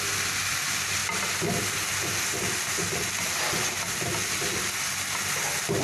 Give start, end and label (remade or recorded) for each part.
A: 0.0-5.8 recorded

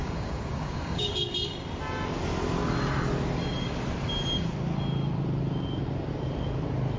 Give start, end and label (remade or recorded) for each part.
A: 0.0-1.1 remade; 1.1-7.0 recorded

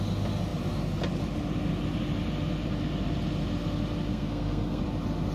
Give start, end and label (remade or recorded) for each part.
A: 0.0-4.1 recorded; 4.1-4.8 remade; 4.8-5.3 recorded

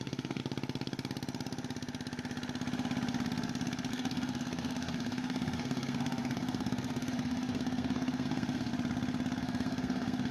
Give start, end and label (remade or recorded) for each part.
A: 0.0-0.4 remade; 0.4-3.9 recorded; 3.9-8.7 remade; 8.7-9.4 recorded; 9.4-10.3 remade

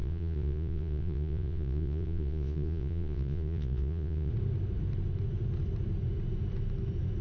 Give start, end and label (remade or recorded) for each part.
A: 0.0-4.3 remade; 4.3-7.2 recorded